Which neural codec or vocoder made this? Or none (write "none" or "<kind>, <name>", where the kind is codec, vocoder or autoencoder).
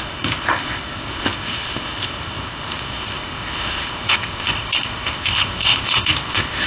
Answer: codec, ZipCodec